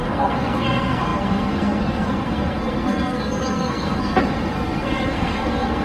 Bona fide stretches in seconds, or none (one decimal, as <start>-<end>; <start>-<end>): none